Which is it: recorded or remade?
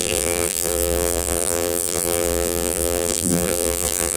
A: remade